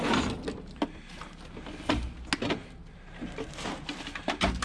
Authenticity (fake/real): real